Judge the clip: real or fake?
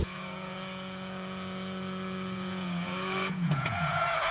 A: fake